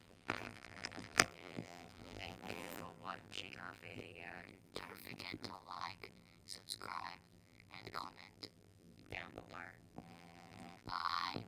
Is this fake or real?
fake